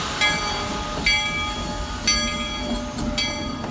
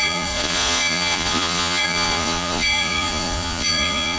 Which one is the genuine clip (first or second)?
first